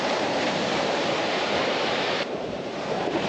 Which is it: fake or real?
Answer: fake